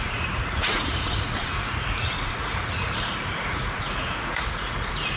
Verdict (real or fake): fake